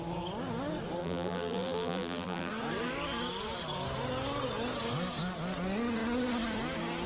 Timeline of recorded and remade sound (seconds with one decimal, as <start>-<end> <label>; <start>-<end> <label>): 0.0-1.0 recorded; 1.0-2.5 remade; 2.5-7.1 recorded